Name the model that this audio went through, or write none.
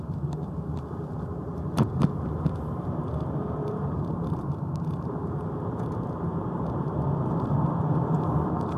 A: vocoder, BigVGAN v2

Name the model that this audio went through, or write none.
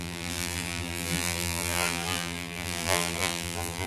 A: vocoder, BigVGAN v2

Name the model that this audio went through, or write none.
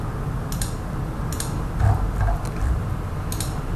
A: none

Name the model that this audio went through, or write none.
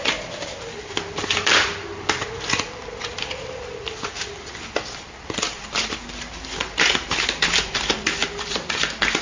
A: vocoder, BigVGAN v2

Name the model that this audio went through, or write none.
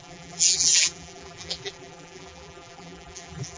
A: vocoder, BigVGAN v2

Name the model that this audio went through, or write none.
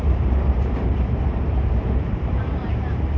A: vocoder, BigVGAN v2